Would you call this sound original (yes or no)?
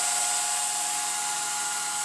yes